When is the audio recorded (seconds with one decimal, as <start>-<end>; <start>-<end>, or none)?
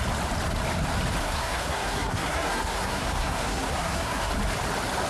0.0-1.2; 4.3-5.1